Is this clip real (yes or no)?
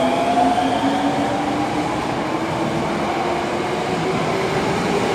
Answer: yes